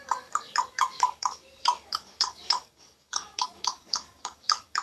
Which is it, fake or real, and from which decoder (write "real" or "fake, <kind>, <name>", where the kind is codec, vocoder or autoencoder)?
fake, codec, DAC